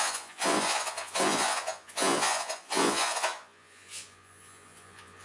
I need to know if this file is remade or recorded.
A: remade